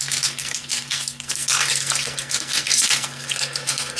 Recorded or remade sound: remade